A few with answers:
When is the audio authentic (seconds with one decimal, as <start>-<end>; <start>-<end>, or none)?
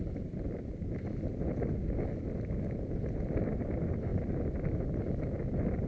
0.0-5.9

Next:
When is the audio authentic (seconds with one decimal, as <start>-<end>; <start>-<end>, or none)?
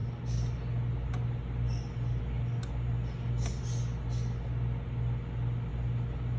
0.0-6.4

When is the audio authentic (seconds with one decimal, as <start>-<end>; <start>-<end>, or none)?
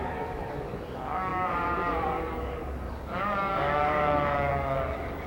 none